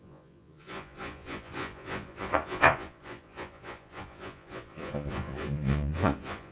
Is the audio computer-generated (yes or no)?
yes